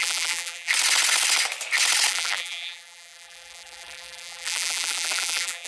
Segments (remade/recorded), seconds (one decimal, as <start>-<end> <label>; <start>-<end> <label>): 0.0-0.7 remade; 0.7-2.1 recorded; 2.1-5.7 remade